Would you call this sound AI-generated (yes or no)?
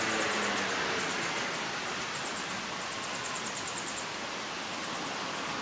no